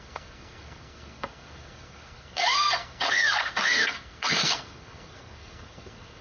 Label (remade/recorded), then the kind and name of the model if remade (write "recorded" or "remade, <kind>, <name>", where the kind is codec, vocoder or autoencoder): remade, codec, SNAC